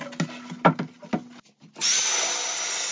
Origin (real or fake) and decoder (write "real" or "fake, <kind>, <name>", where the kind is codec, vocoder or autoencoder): real